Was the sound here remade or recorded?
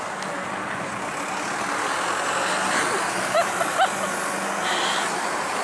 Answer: recorded